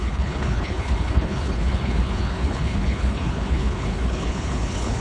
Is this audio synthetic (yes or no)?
yes